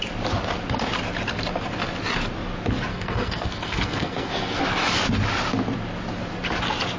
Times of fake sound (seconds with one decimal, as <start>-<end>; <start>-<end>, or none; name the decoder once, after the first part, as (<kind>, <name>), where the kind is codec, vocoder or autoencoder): 2.9-4.6 (codec, SNAC)